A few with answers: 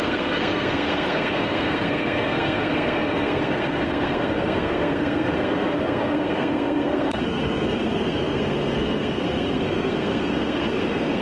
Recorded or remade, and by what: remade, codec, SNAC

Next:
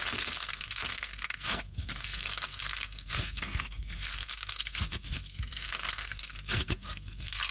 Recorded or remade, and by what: remade, codec, SNAC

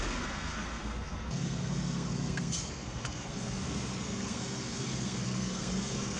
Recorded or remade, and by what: remade, codec, SNAC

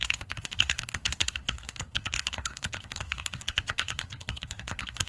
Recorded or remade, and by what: remade, codec, SNAC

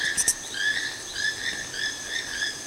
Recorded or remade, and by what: recorded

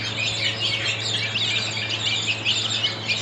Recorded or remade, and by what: recorded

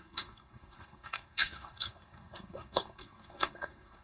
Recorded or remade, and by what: remade, codec, SNAC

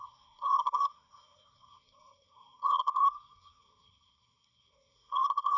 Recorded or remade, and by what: remade, codec, SNAC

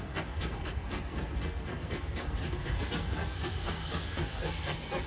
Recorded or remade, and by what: remade, codec, SNAC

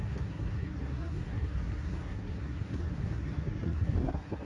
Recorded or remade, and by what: remade, codec, SNAC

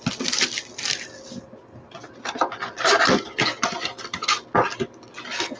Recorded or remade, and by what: recorded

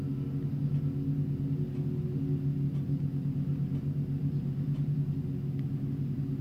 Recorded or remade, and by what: recorded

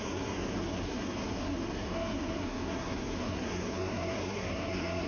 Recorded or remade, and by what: remade, codec, SNAC